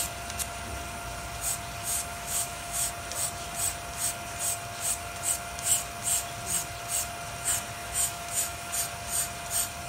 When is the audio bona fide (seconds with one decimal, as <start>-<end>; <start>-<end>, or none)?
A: 0.0-1.8; 2.9-7.8; 8.7-9.9